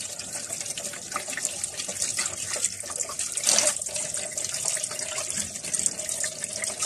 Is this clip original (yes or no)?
yes